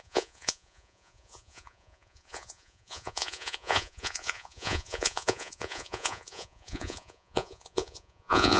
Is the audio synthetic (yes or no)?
yes